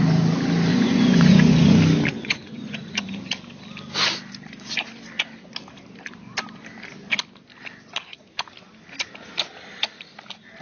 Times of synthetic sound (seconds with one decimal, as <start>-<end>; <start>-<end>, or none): 0.7-1.8; 2.2-3.2